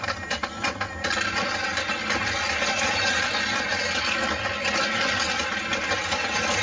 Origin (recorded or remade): recorded